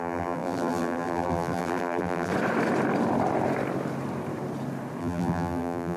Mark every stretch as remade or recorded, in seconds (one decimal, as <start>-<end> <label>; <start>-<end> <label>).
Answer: 0.0-2.3 remade; 2.3-5.0 recorded; 5.0-6.0 remade